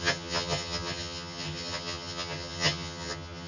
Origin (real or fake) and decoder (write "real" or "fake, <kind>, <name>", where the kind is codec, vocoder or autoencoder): fake, vocoder, HiFi-GAN